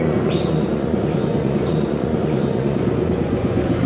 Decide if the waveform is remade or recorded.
remade